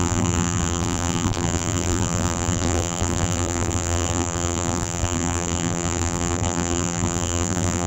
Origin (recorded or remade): remade